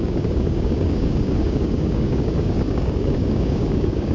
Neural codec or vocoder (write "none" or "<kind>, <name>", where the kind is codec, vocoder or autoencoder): codec, DAC